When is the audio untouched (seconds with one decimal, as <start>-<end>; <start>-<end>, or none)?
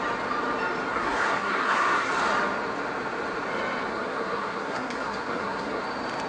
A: 0.0-0.9; 2.1-3.9; 5.8-6.3